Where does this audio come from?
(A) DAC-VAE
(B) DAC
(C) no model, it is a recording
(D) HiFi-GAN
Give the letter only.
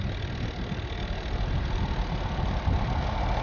C